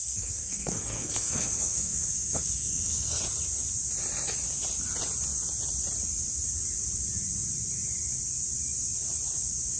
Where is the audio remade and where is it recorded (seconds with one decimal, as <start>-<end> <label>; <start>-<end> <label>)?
0.0-3.2 remade; 3.2-9.8 recorded